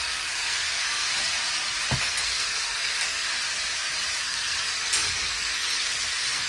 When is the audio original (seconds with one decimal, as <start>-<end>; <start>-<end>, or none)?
1.1-2.0; 3.3-4.2